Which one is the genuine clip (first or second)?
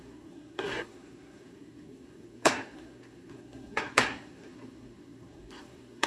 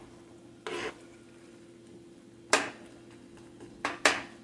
second